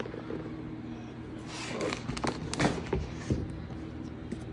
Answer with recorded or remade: recorded